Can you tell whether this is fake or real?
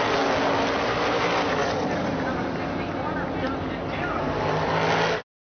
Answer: real